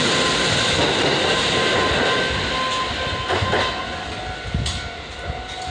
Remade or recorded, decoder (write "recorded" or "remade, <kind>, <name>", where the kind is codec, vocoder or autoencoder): recorded